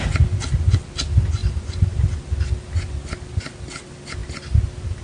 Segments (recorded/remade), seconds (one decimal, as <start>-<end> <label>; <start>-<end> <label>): 0.0-1.4 recorded; 1.4-2.0 remade; 2.0-5.0 recorded